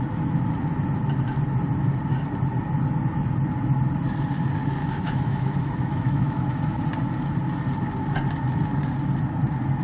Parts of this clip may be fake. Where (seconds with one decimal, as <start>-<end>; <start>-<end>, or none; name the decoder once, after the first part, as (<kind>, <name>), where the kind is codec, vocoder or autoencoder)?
4.8-6.8 (autoencoder, DAC-VAE)